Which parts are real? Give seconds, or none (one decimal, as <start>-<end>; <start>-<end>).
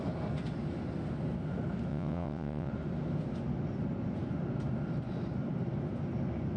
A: 0.0-1.9; 2.7-6.6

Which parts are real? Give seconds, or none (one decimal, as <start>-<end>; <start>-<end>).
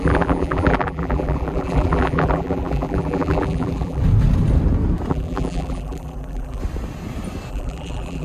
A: 4.0-5.1; 6.6-7.5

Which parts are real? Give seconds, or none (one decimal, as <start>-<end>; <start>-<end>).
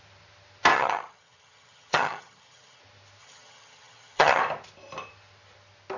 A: 0.0-0.7; 2.8-3.2; 4.4-6.0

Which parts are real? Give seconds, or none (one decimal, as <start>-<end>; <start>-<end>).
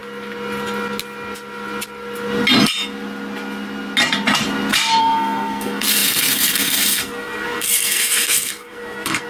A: 0.0-5.0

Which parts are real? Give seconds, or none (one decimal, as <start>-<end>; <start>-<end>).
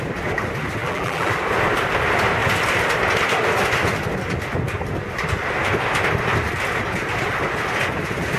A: 0.0-0.8; 1.3-8.4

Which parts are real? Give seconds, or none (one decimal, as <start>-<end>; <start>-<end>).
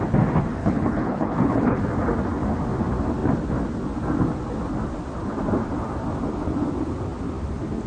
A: 0.0-0.6; 1.8-7.9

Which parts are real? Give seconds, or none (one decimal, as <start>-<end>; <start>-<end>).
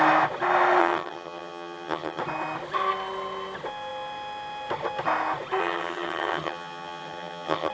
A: 0.0-0.8; 2.2-5.6